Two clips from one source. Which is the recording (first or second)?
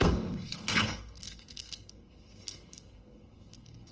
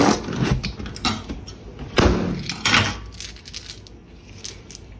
second